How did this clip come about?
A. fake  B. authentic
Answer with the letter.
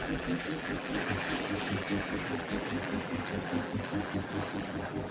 A